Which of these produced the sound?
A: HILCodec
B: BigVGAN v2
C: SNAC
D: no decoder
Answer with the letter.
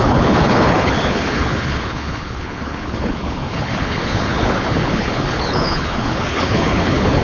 A